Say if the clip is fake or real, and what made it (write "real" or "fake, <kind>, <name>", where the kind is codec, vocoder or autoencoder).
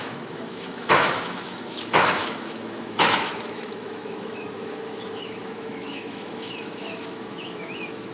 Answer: fake, autoencoder, DAC-VAE